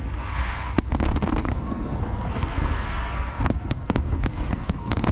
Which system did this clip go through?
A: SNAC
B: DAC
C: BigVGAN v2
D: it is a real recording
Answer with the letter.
A